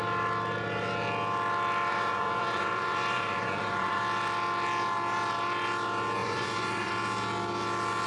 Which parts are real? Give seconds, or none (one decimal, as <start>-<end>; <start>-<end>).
0.0-1.9; 4.0-6.2; 6.9-8.1